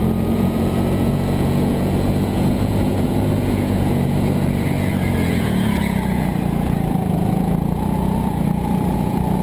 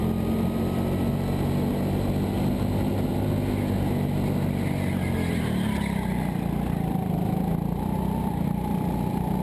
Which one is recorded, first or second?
second